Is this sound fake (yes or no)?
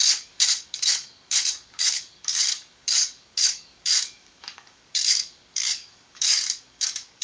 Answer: yes